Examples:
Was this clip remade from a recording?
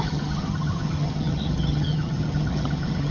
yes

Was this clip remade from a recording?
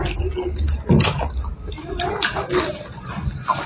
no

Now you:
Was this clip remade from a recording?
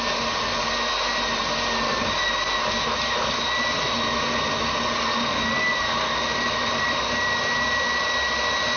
no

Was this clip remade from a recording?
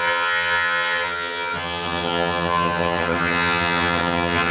yes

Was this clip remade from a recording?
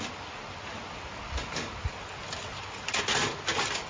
no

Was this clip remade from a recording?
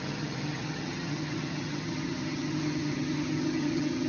yes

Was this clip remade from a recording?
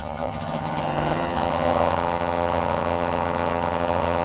yes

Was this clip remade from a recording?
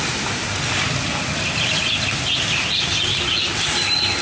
no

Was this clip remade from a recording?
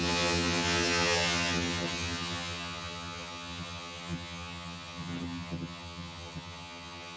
yes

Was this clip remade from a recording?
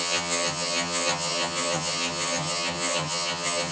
yes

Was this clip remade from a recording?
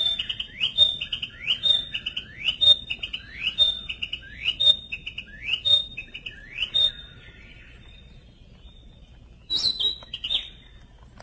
no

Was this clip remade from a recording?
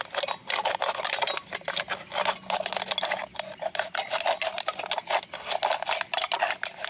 no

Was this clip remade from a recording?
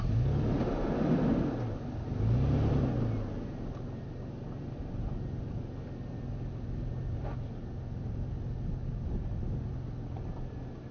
no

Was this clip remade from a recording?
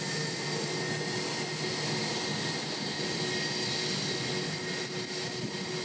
no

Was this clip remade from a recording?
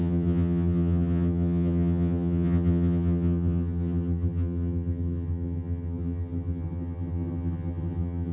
yes